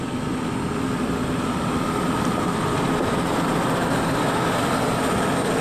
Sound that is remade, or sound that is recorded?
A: recorded